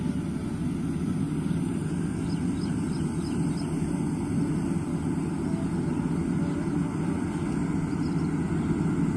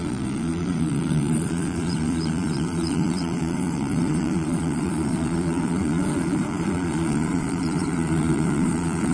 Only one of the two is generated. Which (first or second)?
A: second